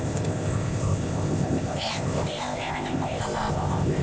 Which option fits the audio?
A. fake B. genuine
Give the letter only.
A